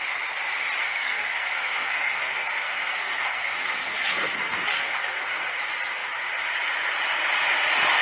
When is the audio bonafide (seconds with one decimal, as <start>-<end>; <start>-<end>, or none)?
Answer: 0.0-0.8; 5.6-8.0